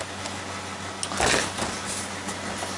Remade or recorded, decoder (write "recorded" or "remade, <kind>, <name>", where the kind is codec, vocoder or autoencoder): recorded